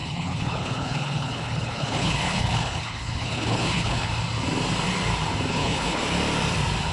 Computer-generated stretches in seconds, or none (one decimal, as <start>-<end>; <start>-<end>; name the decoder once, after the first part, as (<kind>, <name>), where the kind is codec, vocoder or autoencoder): 0.0-4.1 (codec, HILCodec); 5.5-6.0